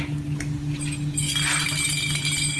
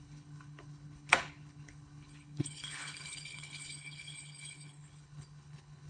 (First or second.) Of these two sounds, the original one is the first